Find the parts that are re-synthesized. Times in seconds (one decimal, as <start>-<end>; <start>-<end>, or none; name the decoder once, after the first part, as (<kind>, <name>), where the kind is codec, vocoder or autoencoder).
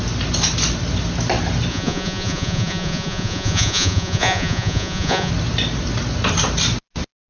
1.7-5.3 (vocoder, Vocos)